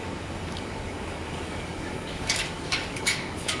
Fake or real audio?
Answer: fake